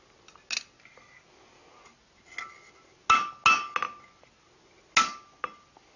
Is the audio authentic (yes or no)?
yes